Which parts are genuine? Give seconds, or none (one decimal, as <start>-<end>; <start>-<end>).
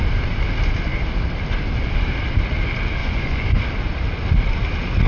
0.0-3.0; 3.6-5.1